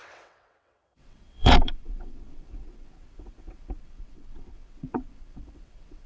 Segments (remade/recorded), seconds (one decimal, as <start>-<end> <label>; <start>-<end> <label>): 0.0-6.1 remade